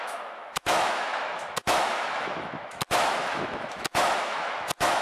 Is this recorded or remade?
remade